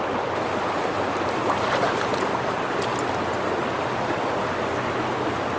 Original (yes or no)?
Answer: yes